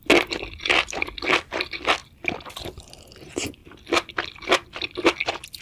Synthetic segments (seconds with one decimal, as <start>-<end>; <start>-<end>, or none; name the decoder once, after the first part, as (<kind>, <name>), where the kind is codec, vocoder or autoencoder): none